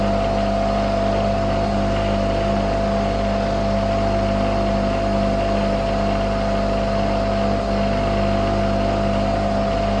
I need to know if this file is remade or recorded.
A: recorded